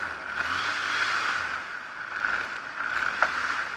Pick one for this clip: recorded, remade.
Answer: recorded